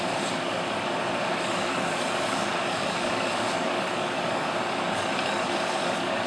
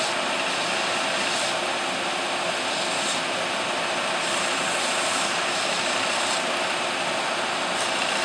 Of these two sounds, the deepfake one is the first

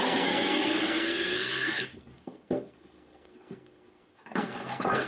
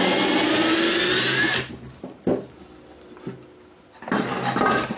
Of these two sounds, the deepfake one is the first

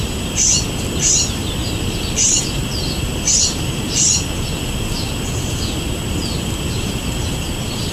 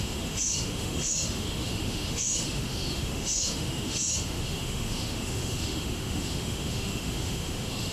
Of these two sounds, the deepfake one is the second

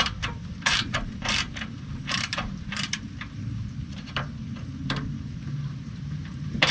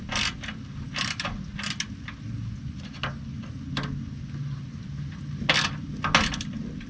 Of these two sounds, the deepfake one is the first